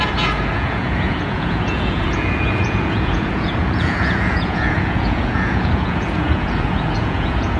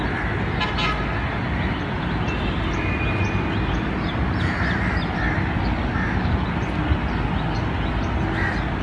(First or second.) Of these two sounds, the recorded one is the second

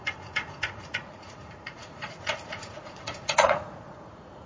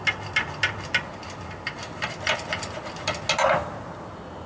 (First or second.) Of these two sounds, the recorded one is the second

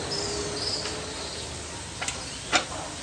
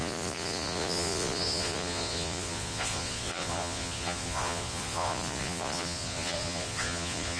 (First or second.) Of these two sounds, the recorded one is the first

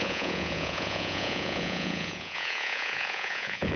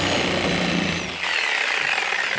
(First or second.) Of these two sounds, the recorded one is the second